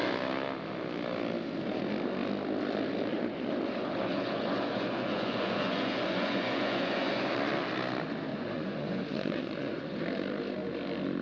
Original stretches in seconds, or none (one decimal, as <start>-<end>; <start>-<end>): 0.0-3.1; 7.3-8.3; 10.0-11.2